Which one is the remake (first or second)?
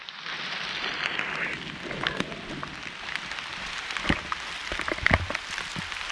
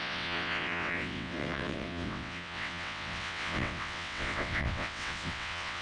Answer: second